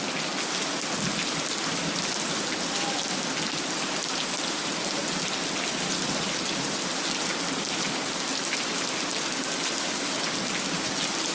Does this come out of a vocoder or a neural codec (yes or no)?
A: no